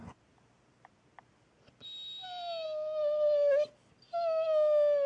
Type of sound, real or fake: real